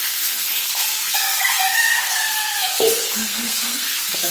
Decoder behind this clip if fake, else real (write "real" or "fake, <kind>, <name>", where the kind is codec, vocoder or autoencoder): fake, codec, SNAC